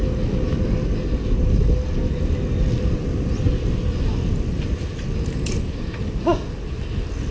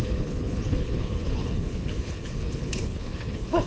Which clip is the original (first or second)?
first